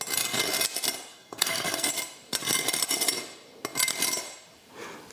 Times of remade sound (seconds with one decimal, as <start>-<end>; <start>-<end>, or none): 1.1-1.9